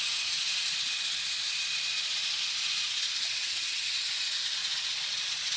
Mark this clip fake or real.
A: fake